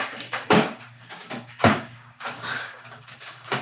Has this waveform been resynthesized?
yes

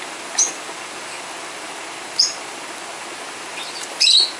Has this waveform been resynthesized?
no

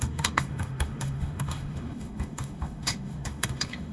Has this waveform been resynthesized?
yes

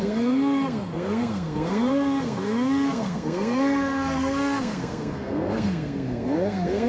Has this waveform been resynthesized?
yes